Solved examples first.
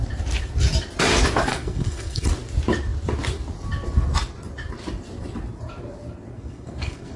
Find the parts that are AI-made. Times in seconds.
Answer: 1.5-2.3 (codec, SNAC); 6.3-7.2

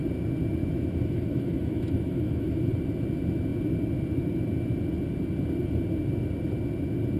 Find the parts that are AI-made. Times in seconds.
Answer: 0.6-2.7 (autoencoder, DAC-VAE)